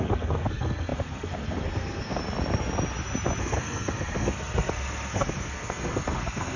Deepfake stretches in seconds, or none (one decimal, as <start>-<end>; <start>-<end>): 0.0-2.2; 3.4-6.6